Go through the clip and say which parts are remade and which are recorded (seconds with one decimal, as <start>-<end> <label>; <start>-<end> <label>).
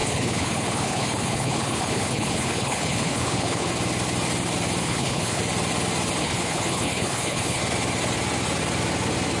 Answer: 0.0-3.7 remade; 3.7-4.8 recorded; 4.8-5.4 remade; 5.4-6.2 recorded; 6.2-7.6 remade; 7.6-9.4 recorded